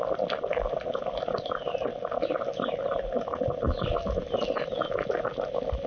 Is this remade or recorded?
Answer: recorded